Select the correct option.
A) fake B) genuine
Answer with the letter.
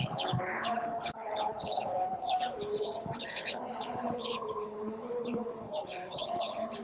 A